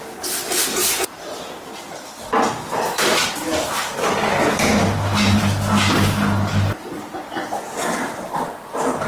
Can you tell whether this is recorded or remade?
recorded